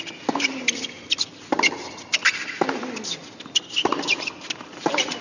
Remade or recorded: recorded